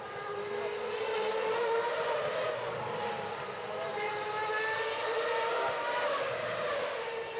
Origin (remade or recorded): recorded